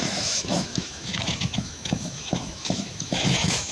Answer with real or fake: fake